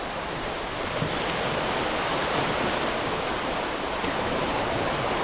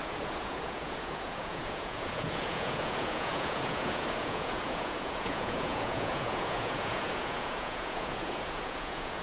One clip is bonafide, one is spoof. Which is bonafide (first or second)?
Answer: first